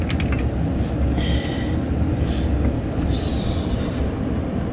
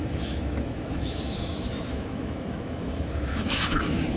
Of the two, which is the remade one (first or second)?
second